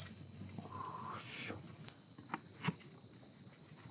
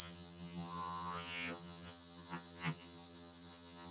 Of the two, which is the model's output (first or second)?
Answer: second